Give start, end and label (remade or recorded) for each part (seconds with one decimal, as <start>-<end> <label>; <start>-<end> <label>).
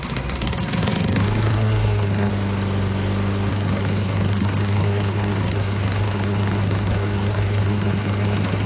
0.0-2.3 remade; 2.3-3.5 recorded; 3.5-8.7 remade